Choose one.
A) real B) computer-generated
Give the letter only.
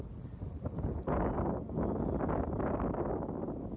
A